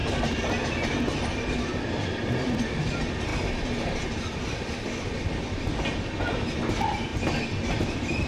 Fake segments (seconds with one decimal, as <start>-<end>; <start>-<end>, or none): none